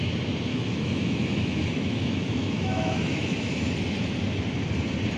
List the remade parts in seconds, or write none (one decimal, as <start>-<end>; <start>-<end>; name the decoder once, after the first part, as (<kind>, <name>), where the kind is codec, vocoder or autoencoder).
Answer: 0.5-3.6 (autoencoder, DAC-VAE)